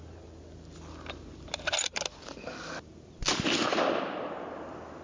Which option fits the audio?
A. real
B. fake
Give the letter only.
A